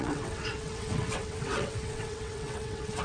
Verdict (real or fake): fake